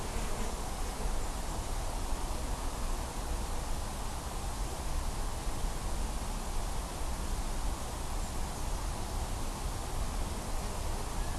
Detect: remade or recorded recorded